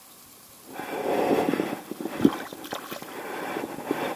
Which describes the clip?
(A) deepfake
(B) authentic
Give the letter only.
B